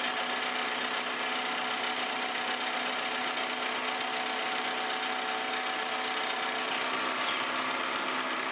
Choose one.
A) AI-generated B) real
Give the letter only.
B